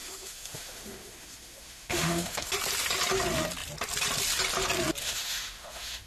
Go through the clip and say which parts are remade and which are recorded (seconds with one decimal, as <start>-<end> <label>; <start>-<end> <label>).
0.0-2.5 remade; 2.5-5.0 recorded; 5.0-6.1 remade

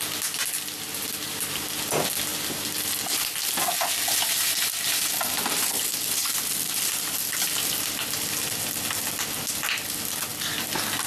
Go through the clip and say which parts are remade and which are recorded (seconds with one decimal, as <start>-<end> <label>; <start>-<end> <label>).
0.0-11.1 recorded

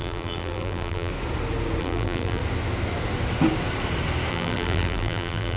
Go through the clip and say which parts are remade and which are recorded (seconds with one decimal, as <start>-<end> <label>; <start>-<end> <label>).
0.0-1.1 remade; 1.1-1.8 recorded; 1.8-2.4 remade; 2.4-4.3 recorded; 4.3-5.6 remade

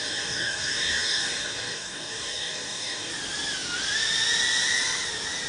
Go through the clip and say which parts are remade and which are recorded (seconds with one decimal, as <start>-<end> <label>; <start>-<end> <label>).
0.0-3.1 remade; 3.1-5.5 recorded

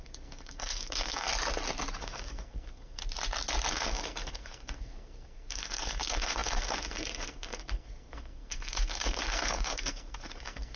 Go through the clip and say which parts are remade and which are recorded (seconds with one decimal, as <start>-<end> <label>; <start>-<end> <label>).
0.0-1.3 remade; 1.3-2.0 recorded; 2.0-3.0 remade; 3.0-3.7 recorded; 3.7-10.8 remade